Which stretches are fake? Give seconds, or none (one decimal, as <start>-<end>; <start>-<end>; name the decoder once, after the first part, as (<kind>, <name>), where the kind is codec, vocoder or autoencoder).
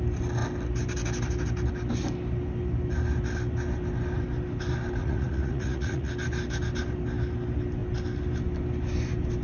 5.0-6.1 (vocoder, Vocos)